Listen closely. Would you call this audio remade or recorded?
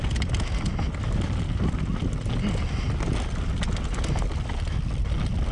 recorded